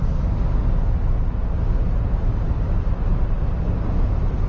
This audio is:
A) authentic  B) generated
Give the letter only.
A